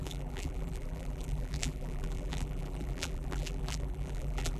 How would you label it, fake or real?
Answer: fake